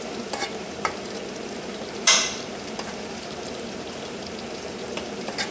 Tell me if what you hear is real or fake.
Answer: fake